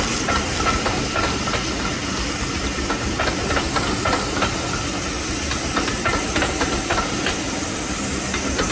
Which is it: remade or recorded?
recorded